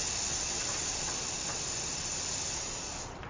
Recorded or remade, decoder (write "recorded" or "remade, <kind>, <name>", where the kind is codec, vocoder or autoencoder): recorded